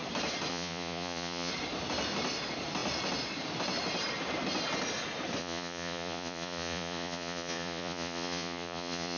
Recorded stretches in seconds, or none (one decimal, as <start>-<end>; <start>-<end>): 0.0-0.5; 1.5-5.4